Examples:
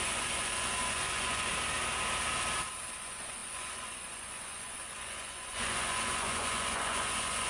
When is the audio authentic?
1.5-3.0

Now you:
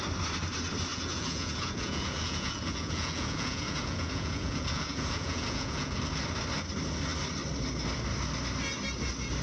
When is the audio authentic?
0.0-0.9; 6.0-9.4

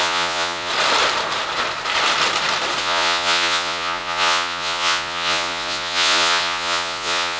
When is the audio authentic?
0.7-2.8

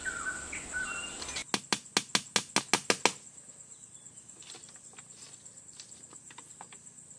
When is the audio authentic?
0.0-7.2

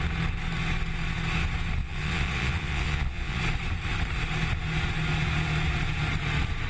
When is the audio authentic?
0.0-1.8; 3.4-6.7

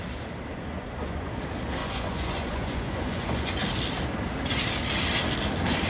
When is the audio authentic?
0.0-0.5; 1.3-1.8; 3.6-5.9

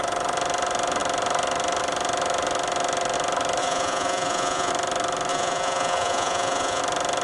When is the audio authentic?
0.0-3.6; 4.7-5.3; 6.8-7.2